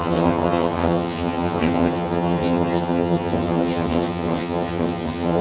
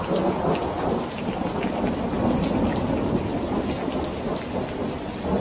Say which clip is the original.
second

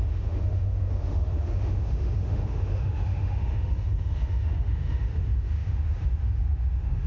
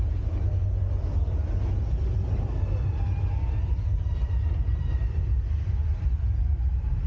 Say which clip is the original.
second